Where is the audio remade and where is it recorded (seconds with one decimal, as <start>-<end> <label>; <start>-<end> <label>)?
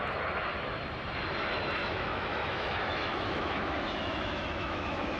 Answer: 0.0-1.8 recorded; 1.8-5.2 remade